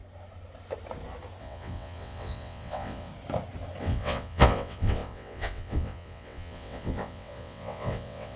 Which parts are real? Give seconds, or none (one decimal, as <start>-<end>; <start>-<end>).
0.0-1.4; 3.1-3.8